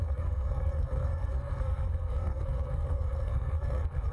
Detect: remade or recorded remade